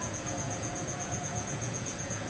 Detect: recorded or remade remade